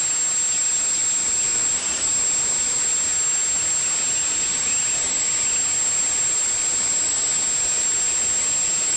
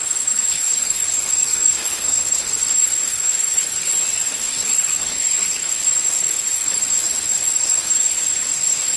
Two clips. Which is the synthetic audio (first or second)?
second